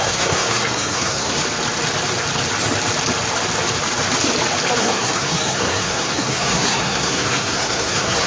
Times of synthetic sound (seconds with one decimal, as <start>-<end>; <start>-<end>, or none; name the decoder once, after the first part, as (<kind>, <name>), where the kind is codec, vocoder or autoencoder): 0.0-1.4 (codec, SNAC); 4.8-8.3